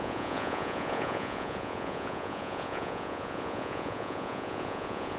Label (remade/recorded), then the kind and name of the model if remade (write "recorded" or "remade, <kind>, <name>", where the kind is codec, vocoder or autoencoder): remade, vocoder, Vocos